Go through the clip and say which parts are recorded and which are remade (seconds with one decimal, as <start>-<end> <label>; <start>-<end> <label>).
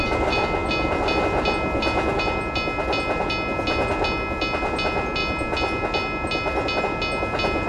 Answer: 0.0-7.7 recorded